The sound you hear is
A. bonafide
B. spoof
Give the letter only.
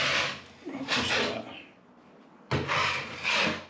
A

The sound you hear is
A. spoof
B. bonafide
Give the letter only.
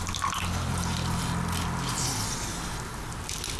B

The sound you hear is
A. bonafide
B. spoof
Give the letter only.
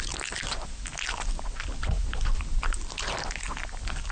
A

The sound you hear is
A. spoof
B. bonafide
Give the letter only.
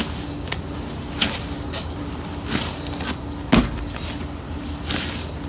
B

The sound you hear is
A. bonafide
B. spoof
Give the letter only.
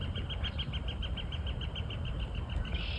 A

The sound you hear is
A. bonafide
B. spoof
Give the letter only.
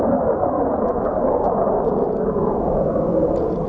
A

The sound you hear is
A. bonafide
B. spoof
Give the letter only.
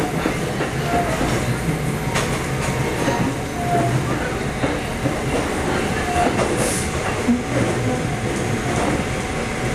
A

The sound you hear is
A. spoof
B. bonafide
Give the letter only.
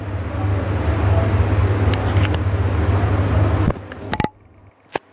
B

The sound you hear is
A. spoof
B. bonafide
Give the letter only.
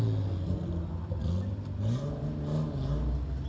B